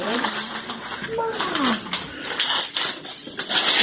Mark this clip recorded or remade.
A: recorded